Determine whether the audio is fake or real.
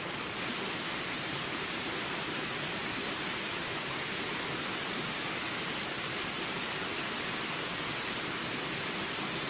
real